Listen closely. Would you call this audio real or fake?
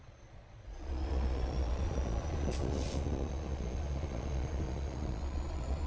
fake